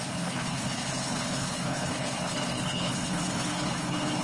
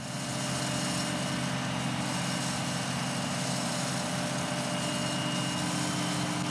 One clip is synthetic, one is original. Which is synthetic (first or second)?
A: first